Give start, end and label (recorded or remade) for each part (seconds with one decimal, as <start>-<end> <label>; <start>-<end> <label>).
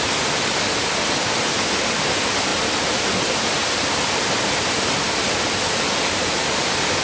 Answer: 0.0-7.0 recorded